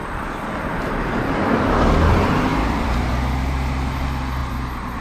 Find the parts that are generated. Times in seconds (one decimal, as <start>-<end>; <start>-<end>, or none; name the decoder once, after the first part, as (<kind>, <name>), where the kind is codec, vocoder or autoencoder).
0.0-1.1 (vocoder, BigVGAN v2); 2.5-3.0; 4.4-5.0